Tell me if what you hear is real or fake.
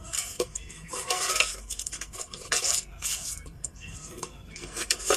fake